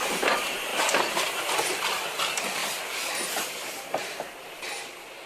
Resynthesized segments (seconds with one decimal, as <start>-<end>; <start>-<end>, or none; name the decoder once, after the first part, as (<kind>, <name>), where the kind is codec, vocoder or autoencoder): none